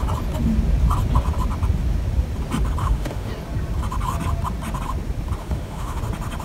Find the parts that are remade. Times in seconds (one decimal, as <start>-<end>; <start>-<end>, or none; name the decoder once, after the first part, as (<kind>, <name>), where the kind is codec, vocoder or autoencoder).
2.8-3.3 (autoencoder, DAC-VAE); 5.4-6.0